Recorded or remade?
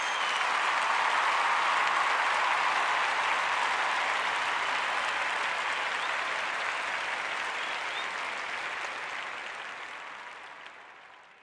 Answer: recorded